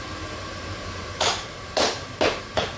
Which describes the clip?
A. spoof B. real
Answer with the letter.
A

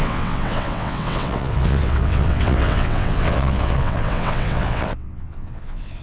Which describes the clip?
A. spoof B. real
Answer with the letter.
A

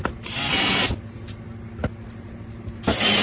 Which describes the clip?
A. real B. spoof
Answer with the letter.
A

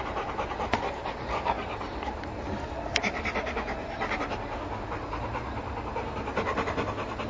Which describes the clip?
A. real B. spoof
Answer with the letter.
A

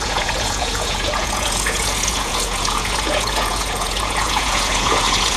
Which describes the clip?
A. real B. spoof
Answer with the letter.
B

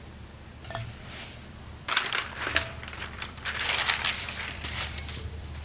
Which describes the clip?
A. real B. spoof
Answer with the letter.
B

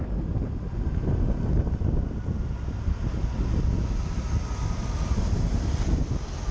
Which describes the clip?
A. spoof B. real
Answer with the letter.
B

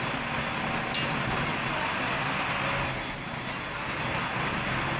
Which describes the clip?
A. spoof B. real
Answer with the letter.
B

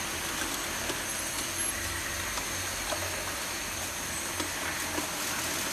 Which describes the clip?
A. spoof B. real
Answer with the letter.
B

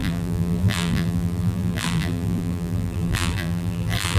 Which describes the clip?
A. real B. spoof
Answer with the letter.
B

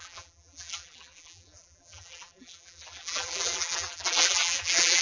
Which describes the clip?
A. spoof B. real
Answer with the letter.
A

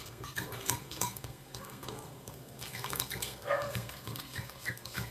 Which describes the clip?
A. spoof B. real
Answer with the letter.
A